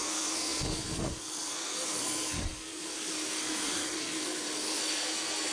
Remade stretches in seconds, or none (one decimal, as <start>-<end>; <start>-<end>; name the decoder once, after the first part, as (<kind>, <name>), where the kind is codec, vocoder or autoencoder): 0.0-5.5 (codec, SNAC)